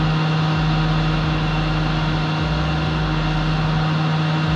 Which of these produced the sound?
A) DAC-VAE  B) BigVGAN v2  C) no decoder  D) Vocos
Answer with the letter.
C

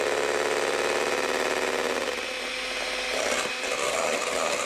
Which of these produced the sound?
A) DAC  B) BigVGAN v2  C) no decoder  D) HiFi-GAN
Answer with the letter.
C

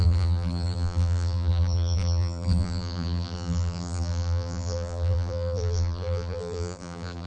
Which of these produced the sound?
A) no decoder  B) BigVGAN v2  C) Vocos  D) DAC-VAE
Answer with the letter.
B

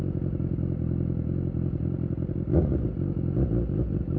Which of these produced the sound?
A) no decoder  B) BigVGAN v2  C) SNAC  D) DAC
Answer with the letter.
A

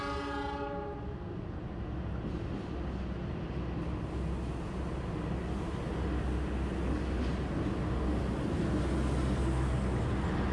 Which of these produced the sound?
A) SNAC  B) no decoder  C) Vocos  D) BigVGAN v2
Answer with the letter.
B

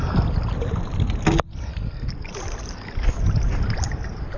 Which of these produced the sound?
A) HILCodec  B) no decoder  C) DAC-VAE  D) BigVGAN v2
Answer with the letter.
B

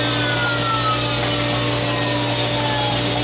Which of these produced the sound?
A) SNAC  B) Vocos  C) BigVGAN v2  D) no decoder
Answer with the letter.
D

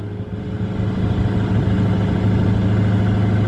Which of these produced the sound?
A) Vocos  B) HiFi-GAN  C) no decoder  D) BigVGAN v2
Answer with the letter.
C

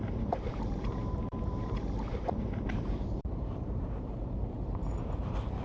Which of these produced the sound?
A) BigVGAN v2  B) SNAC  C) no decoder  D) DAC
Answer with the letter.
A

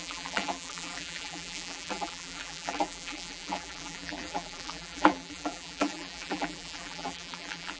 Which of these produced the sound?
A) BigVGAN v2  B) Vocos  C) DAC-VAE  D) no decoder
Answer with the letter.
A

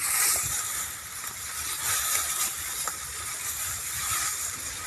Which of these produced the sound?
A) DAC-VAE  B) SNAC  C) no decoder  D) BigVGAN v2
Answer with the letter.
D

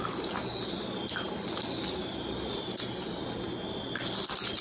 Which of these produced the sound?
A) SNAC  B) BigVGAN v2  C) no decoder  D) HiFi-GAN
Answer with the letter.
C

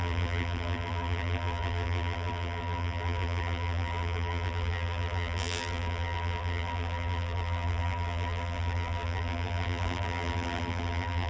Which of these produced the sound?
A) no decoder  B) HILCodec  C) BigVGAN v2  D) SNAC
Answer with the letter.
C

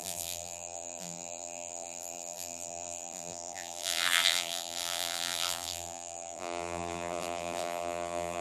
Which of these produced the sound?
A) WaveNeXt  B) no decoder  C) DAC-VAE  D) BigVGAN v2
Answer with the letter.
D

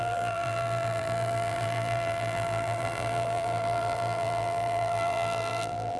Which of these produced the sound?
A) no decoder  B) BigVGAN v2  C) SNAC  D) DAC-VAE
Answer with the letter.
B